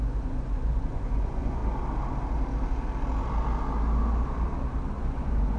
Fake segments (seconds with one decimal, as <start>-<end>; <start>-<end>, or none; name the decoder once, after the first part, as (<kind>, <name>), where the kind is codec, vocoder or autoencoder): 0.0-1.6 (vocoder, Vocos); 5.0-5.6